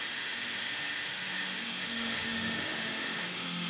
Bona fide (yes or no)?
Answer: no